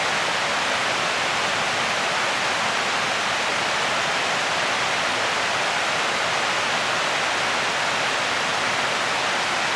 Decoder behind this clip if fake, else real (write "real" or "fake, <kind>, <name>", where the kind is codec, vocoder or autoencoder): real